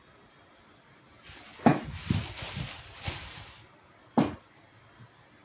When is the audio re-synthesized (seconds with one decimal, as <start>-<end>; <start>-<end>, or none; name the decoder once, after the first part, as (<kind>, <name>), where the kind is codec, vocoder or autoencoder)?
none